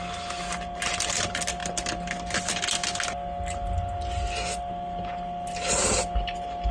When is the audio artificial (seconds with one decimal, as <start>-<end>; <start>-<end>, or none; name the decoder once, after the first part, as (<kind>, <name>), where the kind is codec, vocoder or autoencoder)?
none